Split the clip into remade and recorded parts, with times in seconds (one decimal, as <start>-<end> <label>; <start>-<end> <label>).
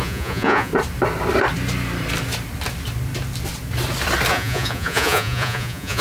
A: 0.0-0.7 remade; 0.7-4.3 recorded; 4.3-6.0 remade